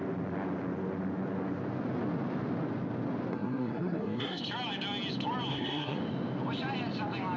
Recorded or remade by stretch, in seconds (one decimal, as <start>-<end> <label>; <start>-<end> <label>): 0.0-3.3 recorded; 3.3-4.4 remade; 4.4-5.5 recorded; 5.5-6.0 remade; 6.0-7.4 recorded